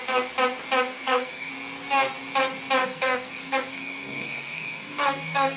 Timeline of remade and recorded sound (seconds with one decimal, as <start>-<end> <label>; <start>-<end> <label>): 0.0-0.9 recorded; 0.9-1.5 remade; 1.5-2.8 recorded; 2.8-5.6 remade

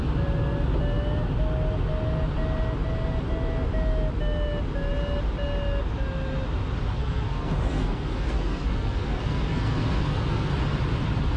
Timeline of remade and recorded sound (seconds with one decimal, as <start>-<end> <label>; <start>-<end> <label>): 0.0-7.0 recorded; 7.0-10.5 remade; 10.5-11.4 recorded

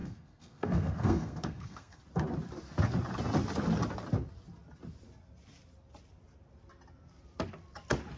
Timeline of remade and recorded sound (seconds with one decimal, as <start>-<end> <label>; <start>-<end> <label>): 0.0-2.0 remade; 2.0-8.2 recorded

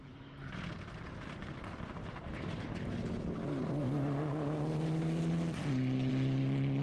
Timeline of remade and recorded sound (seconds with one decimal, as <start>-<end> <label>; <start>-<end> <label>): 0.0-6.8 recorded

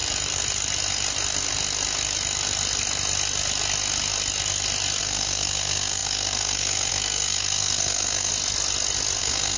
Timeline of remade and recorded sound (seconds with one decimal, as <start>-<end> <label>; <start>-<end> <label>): 0.0-5.0 recorded; 5.0-8.3 remade; 8.3-9.2 recorded; 9.2-9.6 remade

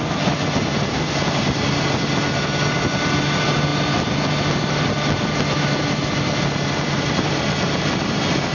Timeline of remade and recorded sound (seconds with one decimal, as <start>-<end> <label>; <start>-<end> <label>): 0.0-8.5 recorded